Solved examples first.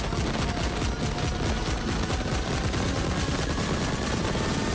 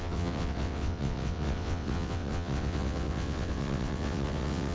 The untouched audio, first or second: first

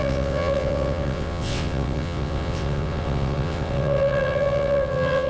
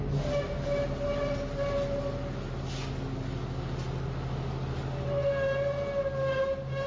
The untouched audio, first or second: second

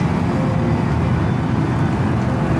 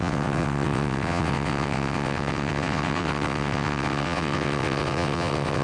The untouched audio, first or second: first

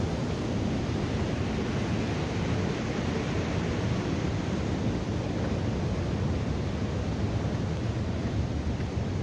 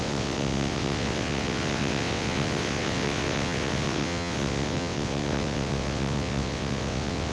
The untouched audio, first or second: first